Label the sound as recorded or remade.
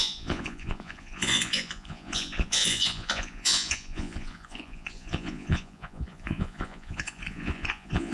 remade